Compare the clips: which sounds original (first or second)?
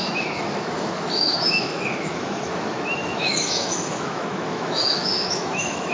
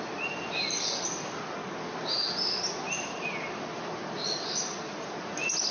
second